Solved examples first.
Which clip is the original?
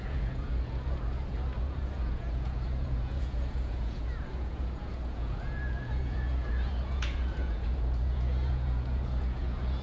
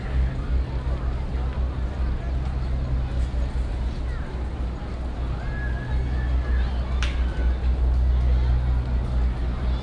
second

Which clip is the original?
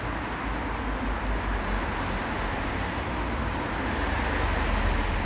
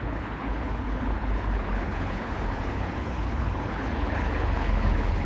first